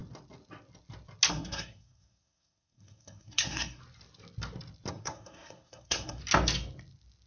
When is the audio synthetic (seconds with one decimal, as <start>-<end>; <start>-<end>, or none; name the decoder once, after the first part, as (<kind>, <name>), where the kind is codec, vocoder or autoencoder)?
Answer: 1.3-3.8 (codec, SNAC); 4.9-6.2